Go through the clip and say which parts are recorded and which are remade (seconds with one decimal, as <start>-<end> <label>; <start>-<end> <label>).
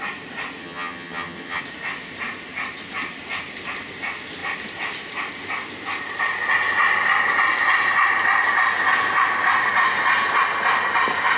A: 0.0-0.6 recorded; 0.6-1.6 remade; 1.6-11.4 recorded